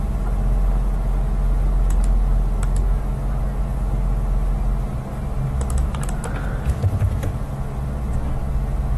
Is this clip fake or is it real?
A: real